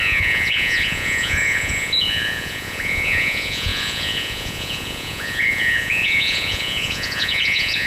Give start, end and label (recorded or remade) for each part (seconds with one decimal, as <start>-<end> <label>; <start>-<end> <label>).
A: 0.0-7.9 remade